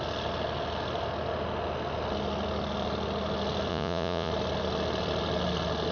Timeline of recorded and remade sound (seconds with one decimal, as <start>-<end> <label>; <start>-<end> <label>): 0.0-3.7 recorded; 3.7-4.3 remade; 4.3-5.9 recorded